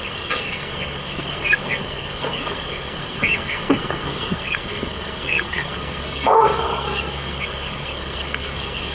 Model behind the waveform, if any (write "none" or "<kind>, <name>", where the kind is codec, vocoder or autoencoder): codec, SNAC